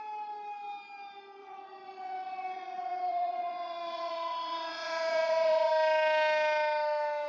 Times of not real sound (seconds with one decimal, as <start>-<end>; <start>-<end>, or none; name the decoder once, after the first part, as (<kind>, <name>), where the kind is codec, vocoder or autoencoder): 1.4-5.7 (vocoder, Vocos)